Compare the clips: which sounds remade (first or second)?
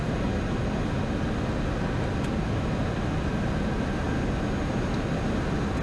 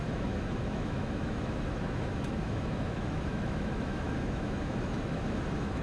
second